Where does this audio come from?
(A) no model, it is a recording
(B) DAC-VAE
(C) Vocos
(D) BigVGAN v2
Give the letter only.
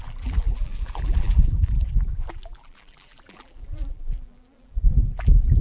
D